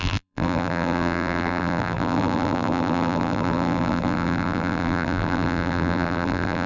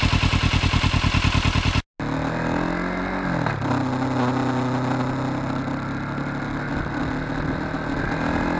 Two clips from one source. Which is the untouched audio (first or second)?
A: second